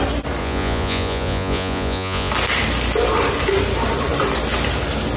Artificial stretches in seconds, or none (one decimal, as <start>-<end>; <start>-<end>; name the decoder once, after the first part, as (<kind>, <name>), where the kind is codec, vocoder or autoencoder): 0.4-2.3 (vocoder, Vocos)